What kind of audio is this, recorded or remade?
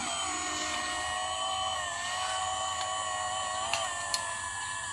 recorded